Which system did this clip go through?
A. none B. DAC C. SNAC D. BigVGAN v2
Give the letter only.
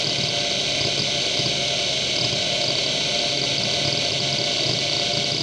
A